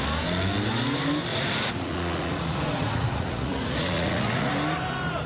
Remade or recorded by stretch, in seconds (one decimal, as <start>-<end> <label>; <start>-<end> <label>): 0.0-1.3 recorded; 1.3-4.5 remade; 4.5-5.3 recorded